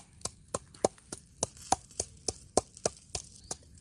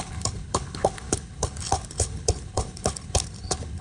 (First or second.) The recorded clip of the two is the first